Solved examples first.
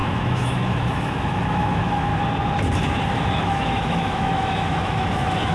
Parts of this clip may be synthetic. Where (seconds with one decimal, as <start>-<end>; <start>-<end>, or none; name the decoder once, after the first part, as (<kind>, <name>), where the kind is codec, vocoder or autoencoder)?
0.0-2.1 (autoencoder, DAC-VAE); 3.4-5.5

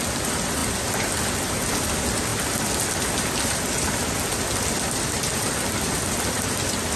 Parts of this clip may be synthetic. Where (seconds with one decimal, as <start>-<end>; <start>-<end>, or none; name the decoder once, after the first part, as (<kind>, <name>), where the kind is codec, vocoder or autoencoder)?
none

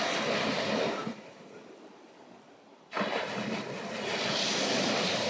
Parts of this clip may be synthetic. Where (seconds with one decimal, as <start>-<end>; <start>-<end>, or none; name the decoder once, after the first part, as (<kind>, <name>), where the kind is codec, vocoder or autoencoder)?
none

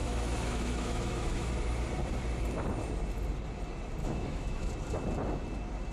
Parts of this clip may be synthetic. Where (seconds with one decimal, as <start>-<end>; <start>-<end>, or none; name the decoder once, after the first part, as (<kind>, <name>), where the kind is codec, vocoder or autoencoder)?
0.0-1.5 (autoencoder, DAC-VAE); 4.0-4.7

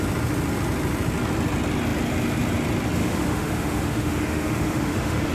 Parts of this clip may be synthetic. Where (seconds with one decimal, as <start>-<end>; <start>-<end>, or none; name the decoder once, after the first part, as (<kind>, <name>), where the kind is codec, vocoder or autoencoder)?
3.0-5.3 (autoencoder, DAC-VAE)

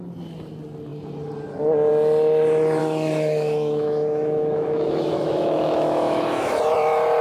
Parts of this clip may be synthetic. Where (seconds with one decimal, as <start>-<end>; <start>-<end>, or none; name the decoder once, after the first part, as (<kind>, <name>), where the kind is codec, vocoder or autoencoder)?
2.8-6.6 (autoencoder, DAC-VAE)

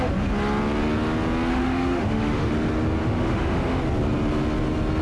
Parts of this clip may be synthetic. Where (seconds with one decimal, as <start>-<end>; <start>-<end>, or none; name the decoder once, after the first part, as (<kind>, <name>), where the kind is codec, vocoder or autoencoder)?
1.5-2.5 (autoencoder, DAC-VAE); 3.0-3.8